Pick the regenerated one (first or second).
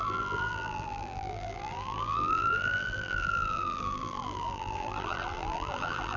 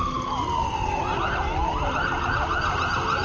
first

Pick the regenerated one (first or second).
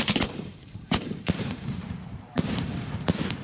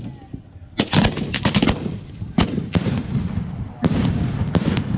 first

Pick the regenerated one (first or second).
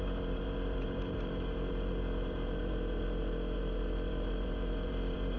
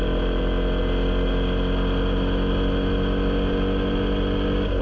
first